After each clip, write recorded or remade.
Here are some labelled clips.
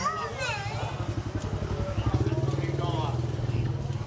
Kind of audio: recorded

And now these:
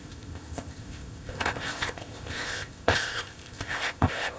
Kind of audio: remade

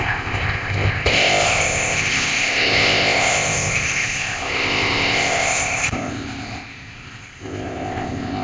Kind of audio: remade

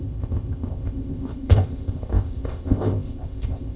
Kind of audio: remade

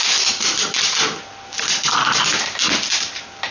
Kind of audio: recorded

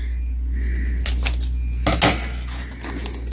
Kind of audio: recorded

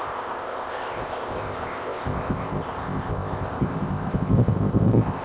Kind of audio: remade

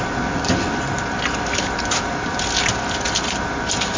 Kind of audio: recorded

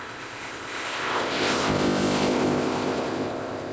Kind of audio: remade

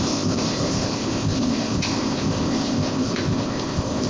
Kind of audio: remade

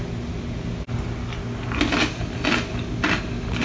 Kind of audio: recorded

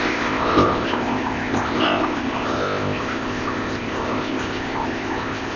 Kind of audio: remade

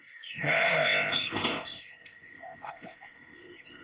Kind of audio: remade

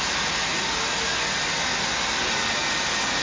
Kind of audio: recorded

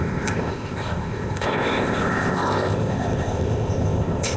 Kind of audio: remade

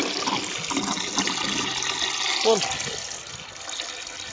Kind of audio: recorded